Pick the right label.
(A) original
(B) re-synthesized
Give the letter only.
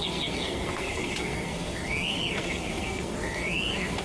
B